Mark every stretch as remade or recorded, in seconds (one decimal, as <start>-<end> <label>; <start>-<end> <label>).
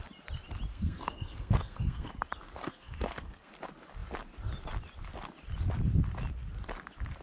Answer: 0.0-0.7 recorded; 0.7-2.1 remade; 2.1-2.6 recorded; 2.6-3.5 remade; 3.5-7.2 recorded